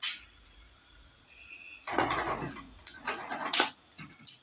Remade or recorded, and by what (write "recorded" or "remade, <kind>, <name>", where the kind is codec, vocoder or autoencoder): remade, vocoder, Vocos